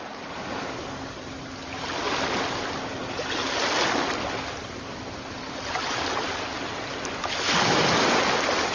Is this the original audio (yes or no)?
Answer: yes